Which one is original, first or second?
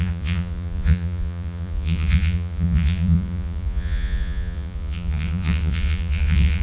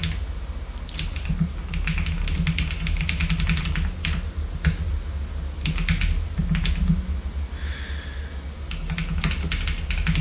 second